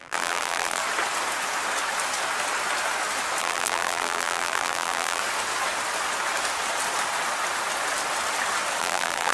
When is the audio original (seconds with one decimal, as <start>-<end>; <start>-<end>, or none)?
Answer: 0.8-3.4; 5.2-8.8

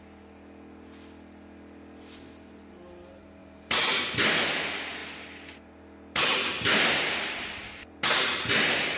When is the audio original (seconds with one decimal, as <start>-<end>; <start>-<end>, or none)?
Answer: 0.0-3.4; 4.0-9.0